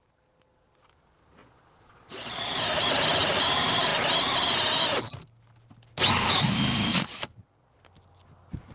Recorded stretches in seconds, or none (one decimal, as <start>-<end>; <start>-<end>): 0.0-1.4; 2.6-6.9; 7.8-8.7